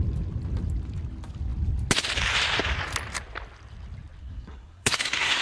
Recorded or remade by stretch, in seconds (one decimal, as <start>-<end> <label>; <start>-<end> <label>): 0.0-4.2 recorded; 4.2-5.4 remade